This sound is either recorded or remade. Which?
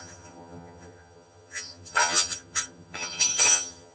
remade